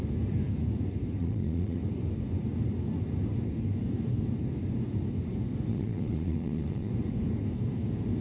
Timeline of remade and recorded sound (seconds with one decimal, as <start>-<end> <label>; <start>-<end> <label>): 0.0-1.2 recorded; 1.2-1.8 remade; 1.8-5.7 recorded; 5.7-6.9 remade; 6.9-8.2 recorded